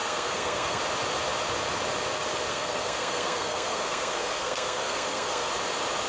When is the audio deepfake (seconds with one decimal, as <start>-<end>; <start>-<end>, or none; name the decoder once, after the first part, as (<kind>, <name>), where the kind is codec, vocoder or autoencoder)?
0.0-0.8 (codec, SNAC); 2.5-5.5